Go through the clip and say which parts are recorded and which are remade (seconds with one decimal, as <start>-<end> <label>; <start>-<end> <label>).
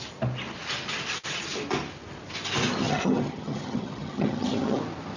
0.0-2.8 recorded; 2.8-4.8 remade; 4.8-5.2 recorded